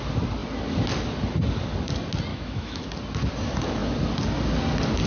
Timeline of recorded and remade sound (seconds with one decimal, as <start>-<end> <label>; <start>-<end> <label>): 0.0-2.3 recorded; 2.3-2.9 remade; 2.9-5.1 recorded